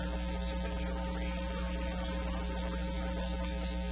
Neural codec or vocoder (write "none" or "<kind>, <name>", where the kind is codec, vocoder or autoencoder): none